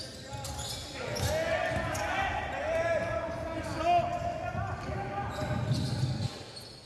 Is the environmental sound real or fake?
real